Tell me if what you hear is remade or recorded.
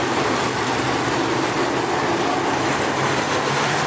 recorded